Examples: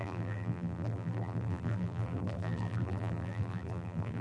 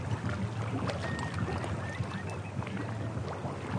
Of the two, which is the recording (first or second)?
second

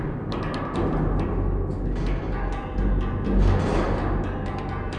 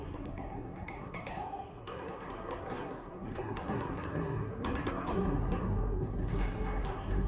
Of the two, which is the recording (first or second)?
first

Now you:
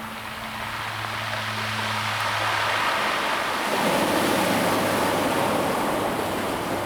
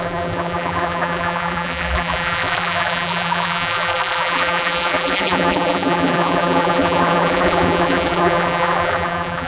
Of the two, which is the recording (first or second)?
first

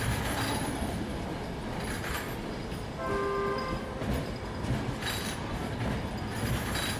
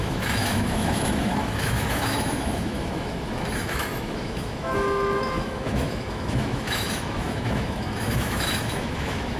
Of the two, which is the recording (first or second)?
first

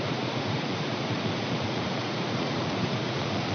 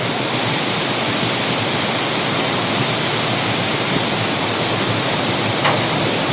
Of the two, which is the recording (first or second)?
second